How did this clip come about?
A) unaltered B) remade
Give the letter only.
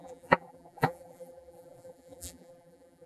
B